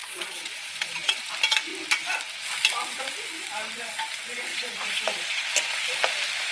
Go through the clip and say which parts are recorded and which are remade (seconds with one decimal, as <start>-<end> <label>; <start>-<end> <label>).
0.0-1.2 remade; 1.2-4.5 recorded; 4.5-5.5 remade; 5.5-6.5 recorded